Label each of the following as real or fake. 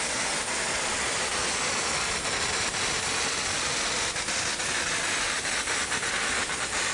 real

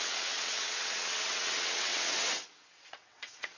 fake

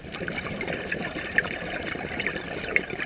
real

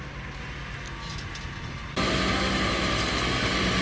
real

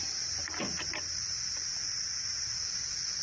real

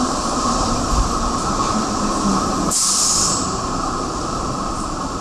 fake